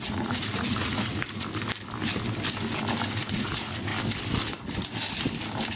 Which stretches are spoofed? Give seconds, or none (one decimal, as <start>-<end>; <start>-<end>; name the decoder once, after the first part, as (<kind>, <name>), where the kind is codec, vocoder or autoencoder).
0.0-1.5 (vocoder, Vocos); 3.1-3.9; 4.5-4.9